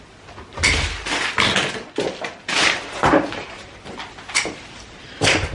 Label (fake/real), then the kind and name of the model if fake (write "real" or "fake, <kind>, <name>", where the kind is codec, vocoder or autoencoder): real